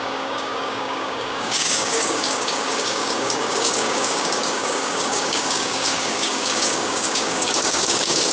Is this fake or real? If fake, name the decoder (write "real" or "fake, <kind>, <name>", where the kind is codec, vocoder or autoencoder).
fake, codec, DAC